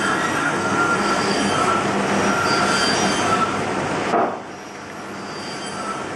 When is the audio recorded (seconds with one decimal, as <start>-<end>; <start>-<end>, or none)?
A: 0.0-0.4; 1.5-6.2